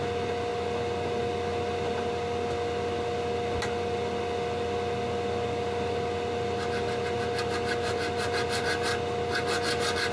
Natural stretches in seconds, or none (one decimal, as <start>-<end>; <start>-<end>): 0.0-10.1